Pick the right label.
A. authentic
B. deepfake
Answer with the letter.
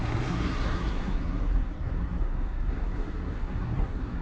B